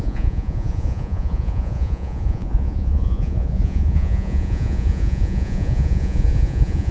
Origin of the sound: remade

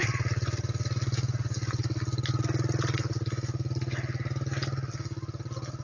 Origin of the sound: recorded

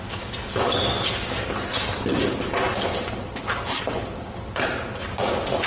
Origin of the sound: recorded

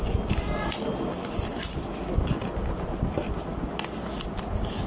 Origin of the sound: recorded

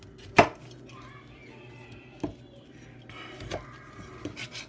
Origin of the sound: recorded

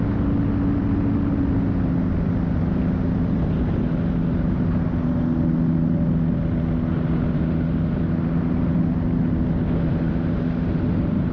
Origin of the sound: recorded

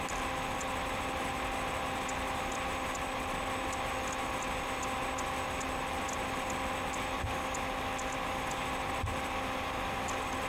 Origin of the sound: recorded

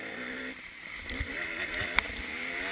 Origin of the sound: remade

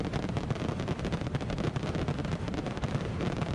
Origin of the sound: recorded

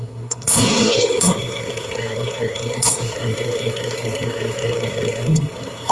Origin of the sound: remade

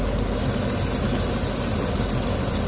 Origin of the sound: recorded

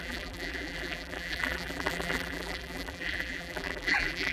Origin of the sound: remade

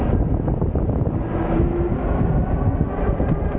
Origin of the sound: recorded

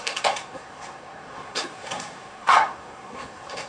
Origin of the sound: remade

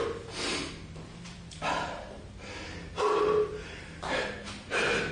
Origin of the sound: recorded